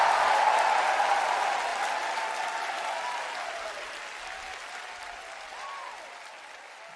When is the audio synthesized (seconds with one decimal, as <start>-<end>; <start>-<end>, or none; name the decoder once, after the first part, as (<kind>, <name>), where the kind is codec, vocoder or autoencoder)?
none